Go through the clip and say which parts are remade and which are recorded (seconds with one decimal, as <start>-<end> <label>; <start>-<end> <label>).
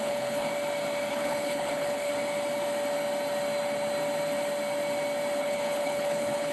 0.0-0.5 remade; 0.5-1.1 recorded; 1.1-2.1 remade; 2.1-5.4 recorded; 5.4-6.5 remade